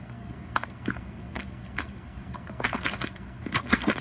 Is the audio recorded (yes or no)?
no